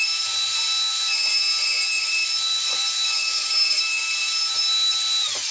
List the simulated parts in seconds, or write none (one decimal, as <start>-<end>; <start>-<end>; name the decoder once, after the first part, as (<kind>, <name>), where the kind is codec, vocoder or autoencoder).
3.2-4.1 (codec, DAC)